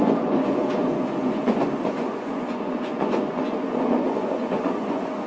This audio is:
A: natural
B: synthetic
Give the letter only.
B